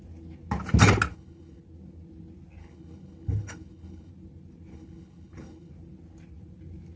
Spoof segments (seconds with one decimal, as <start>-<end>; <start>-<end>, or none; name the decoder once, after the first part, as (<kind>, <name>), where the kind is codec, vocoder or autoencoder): 1.1-1.6 (codec, HILCodec); 2.6-4.1; 4.7-5.7